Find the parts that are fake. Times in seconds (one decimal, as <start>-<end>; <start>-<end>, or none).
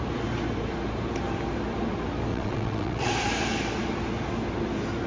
2.3-3.1